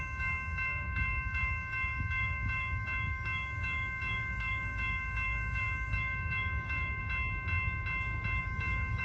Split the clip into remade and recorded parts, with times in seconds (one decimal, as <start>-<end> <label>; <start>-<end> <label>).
0.0-7.0 remade; 7.0-8.4 recorded; 8.4-9.0 remade